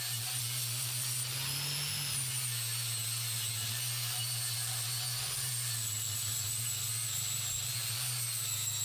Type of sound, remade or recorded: recorded